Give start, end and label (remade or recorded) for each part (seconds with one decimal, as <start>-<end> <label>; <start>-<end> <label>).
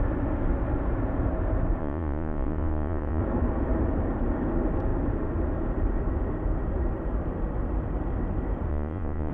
0.0-1.8 recorded; 1.8-3.2 remade; 3.2-8.7 recorded; 8.7-9.3 remade